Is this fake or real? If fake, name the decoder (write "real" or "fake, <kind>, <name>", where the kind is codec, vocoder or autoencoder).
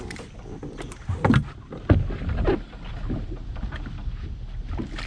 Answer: fake, vocoder, BigVGAN v2